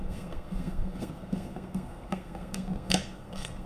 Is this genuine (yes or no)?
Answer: no